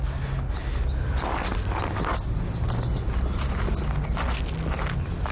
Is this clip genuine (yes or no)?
yes